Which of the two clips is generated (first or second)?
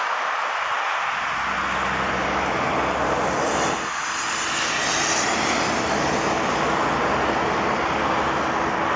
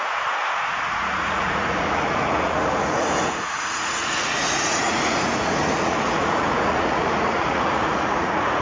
second